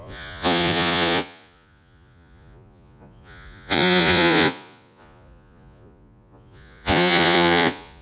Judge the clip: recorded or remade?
remade